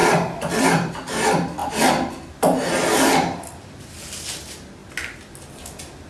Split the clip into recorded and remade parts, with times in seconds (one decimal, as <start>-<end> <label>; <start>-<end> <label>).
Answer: 0.0-6.1 recorded